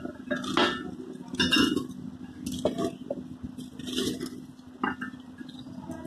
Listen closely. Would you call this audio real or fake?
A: real